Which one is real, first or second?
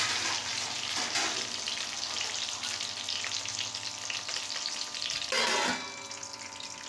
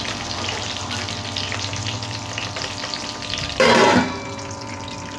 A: first